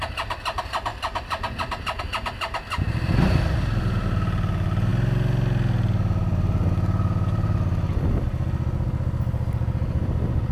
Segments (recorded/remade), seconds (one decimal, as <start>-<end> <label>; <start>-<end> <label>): 0.0-10.5 recorded